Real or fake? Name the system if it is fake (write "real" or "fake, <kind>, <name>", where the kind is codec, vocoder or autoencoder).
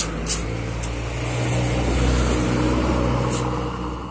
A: real